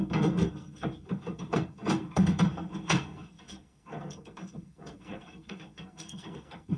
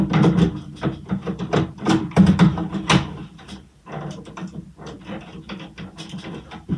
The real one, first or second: second